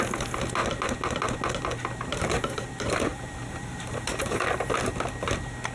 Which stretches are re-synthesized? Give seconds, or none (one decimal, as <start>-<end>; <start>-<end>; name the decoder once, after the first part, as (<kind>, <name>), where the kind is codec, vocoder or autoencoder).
2.1-2.7 (vocoder, BigVGAN v2); 3.1-4.4